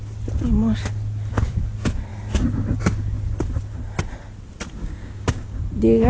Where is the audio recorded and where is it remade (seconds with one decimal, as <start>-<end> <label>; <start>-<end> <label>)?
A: 0.0-4.8 recorded; 4.8-5.6 remade; 5.6-6.1 recorded